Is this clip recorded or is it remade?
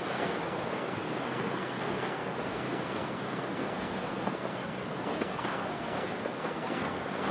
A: remade